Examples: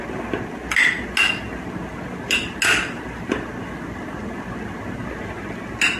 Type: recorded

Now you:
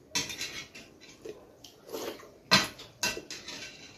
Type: recorded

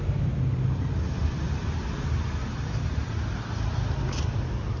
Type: recorded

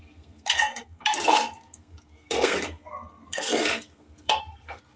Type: remade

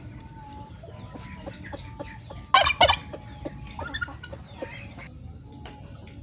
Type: recorded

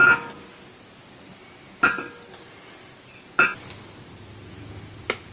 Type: recorded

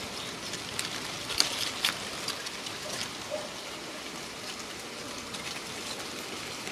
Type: recorded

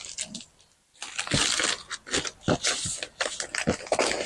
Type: recorded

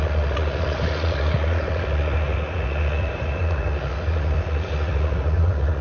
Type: remade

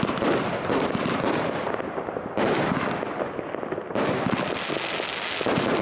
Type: recorded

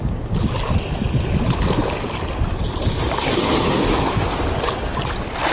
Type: recorded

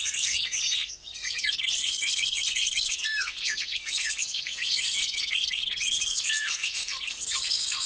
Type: remade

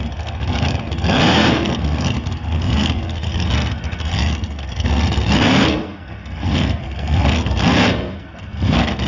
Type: remade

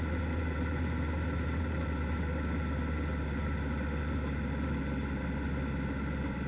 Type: recorded